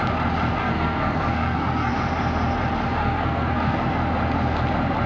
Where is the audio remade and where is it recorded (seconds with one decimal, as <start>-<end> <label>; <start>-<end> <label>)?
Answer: 0.0-0.6 recorded; 0.6-1.9 remade; 1.9-3.0 recorded; 3.0-3.9 remade; 3.9-5.1 recorded